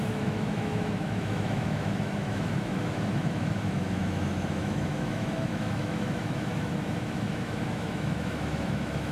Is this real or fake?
fake